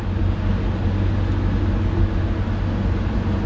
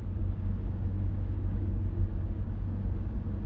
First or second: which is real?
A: first